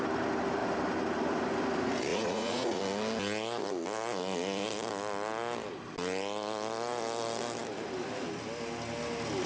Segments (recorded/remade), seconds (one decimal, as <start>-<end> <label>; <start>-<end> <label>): 0.0-2.1 recorded; 2.1-2.8 remade; 2.8-9.5 recorded